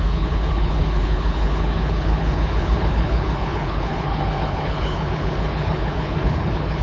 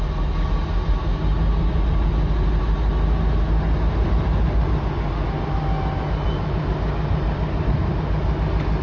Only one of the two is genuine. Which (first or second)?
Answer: second